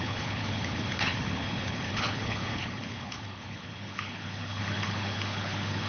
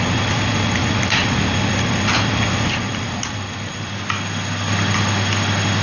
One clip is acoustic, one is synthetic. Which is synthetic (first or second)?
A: first